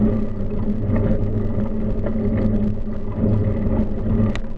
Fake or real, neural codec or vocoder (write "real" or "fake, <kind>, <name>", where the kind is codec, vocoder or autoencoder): real